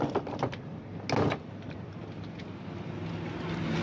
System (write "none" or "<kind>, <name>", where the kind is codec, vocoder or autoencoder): none